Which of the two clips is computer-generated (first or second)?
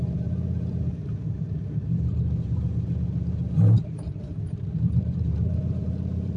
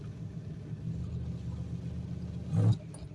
first